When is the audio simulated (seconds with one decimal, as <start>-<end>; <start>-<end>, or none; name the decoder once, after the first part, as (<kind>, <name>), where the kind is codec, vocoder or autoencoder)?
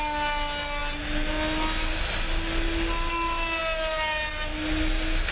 none